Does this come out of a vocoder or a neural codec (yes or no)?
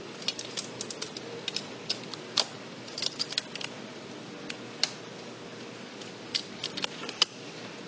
no